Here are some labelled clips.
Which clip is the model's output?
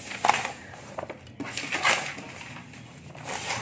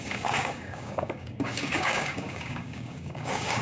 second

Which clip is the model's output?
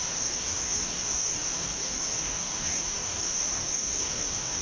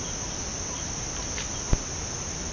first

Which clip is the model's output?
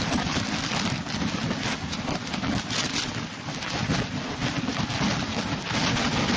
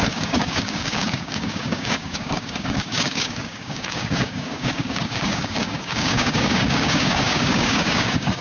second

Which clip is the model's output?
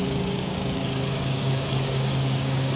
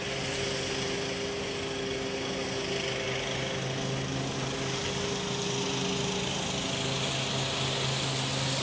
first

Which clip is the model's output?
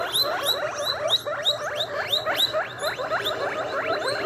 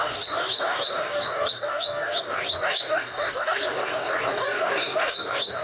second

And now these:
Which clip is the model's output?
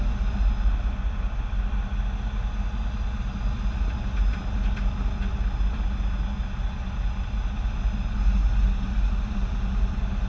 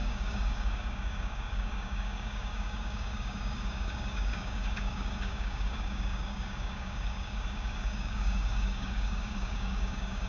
second